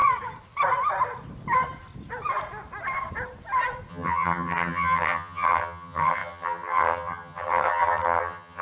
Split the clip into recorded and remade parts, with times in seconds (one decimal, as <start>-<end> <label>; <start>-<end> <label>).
0.0-3.9 recorded; 3.9-8.6 remade